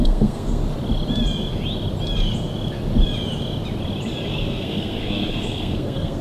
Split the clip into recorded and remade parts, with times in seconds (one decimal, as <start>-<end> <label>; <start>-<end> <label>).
0.0-0.6 remade; 0.6-4.3 recorded; 4.3-6.2 remade